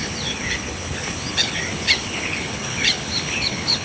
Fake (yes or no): yes